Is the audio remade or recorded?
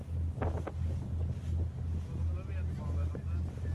recorded